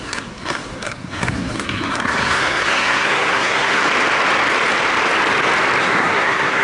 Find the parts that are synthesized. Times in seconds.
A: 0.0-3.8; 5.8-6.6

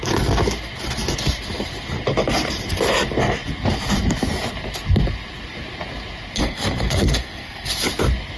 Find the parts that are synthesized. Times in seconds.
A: 6.4-7.7

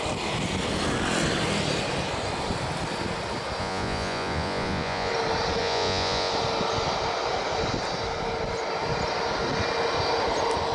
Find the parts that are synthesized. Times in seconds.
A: 3.6-5.1; 5.6-6.3